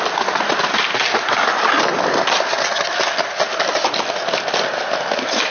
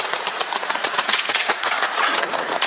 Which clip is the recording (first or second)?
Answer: first